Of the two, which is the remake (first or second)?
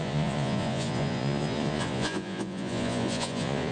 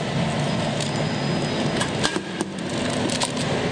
first